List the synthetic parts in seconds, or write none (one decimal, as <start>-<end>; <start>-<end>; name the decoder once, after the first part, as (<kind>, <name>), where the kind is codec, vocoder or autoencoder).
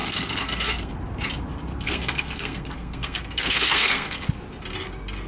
0.0-0.9 (codec, SNAC); 1.7-4.3